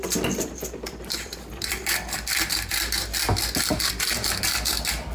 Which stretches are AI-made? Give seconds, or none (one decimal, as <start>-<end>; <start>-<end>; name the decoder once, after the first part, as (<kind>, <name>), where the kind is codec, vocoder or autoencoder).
0.0-2.7 (vocoder, BigVGAN v2); 3.9-5.1